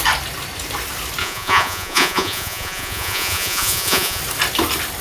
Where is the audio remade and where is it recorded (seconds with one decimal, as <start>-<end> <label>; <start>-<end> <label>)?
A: 0.0-1.2 recorded; 1.2-4.2 remade; 4.2-5.0 recorded